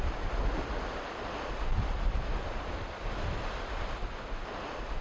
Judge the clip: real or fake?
real